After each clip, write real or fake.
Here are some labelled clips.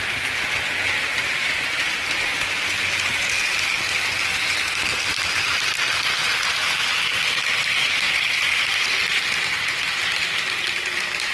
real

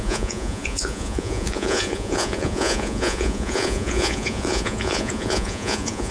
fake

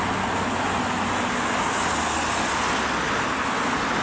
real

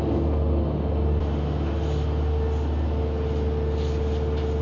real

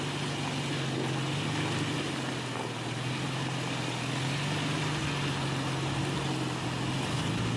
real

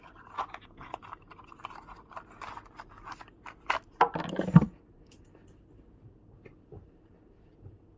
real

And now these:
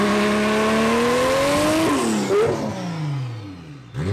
real